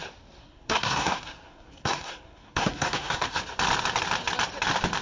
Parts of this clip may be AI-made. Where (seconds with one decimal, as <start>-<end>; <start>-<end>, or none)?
0.4-3.4